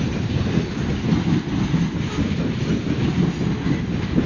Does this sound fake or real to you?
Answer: real